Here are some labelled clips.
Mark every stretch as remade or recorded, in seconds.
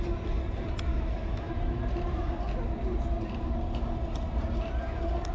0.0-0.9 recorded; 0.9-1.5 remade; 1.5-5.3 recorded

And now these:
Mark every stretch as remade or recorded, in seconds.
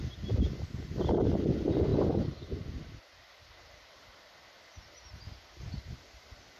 0.0-6.6 recorded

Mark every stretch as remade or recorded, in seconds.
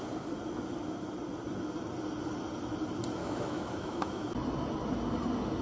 0.0-3.2 recorded; 3.2-4.3 remade; 4.3-5.6 recorded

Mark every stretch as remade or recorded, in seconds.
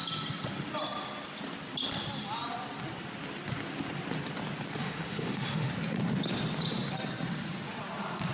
0.0-4.8 recorded; 4.8-5.7 remade; 5.7-8.3 recorded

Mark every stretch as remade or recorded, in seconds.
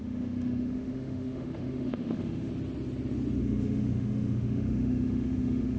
0.0-2.5 remade; 2.5-3.4 recorded; 3.4-5.8 remade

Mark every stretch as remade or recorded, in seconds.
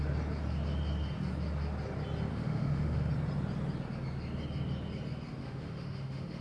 0.0-2.3 recorded; 2.3-3.1 remade; 3.1-5.4 recorded; 5.4-6.4 remade